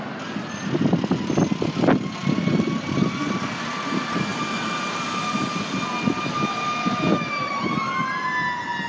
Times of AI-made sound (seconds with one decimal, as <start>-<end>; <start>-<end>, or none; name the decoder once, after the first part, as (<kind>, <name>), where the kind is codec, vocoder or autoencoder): none